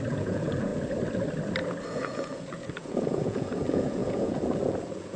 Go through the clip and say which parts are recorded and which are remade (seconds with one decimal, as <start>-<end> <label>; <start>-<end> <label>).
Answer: 0.0-0.7 remade; 0.7-1.9 recorded; 1.9-5.2 remade